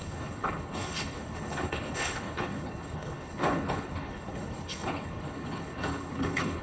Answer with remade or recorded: remade